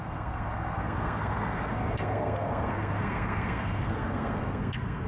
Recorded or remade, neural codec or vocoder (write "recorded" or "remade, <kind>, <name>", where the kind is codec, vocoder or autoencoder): remade, codec, SNAC